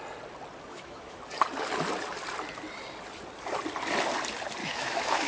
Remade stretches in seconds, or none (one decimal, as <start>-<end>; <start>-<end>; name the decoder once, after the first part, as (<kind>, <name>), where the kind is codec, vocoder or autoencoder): 0.7-1.2 (autoencoder, DAC-VAE); 4.6-5.3